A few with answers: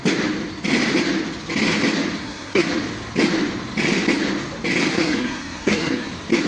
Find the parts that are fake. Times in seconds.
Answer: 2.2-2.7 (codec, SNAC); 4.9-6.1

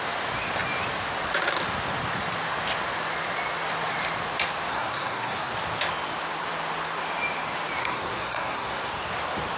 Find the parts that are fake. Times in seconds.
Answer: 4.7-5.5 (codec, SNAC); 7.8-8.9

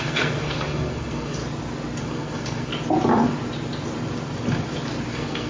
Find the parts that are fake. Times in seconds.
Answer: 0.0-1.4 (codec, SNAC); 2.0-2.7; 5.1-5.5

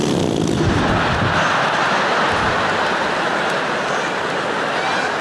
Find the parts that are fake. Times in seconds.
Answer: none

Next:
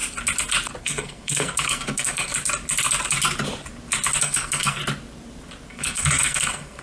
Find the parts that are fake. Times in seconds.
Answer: 0.8-2.3 (codec, SNAC); 4.2-4.8; 5.7-6.8

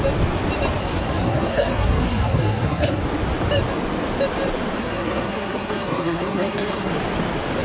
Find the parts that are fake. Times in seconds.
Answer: 0.8-3.0 (codec, SNAC); 4.8-6.9

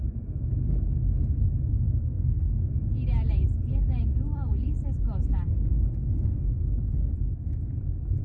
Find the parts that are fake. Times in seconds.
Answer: 1.7-2.7 (codec, SNAC); 5.7-7.1